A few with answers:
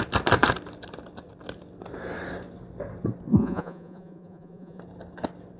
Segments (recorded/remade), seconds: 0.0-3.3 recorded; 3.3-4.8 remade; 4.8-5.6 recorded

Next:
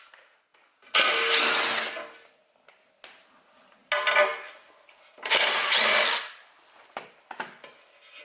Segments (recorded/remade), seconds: 0.0-8.2 recorded

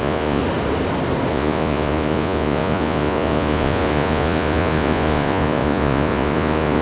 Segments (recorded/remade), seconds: 0.0-0.4 remade; 0.4-1.3 recorded; 1.3-6.8 remade

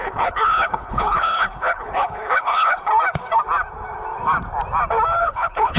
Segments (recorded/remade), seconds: 0.0-2.9 remade; 2.9-5.2 recorded; 5.2-5.8 remade

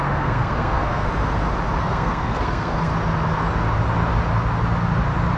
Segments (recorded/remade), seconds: 0.0-1.1 remade; 1.1-1.8 recorded; 1.8-2.9 remade; 2.9-5.4 recorded